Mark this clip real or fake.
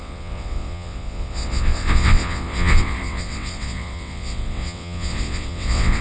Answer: fake